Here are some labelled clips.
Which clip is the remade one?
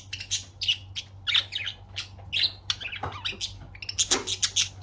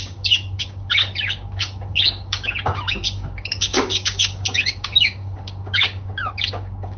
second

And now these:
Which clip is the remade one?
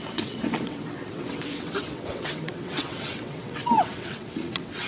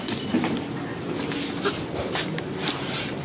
first